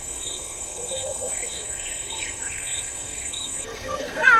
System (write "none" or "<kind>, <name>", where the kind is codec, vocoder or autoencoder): codec, SNAC